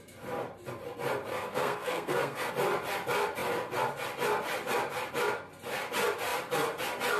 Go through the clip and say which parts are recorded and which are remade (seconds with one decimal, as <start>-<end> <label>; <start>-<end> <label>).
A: 0.0-1.3 recorded; 1.3-2.5 remade; 2.5-7.2 recorded